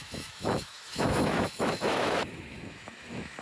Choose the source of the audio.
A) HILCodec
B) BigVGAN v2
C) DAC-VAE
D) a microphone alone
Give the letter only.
C